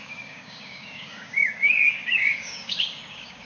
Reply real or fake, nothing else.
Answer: fake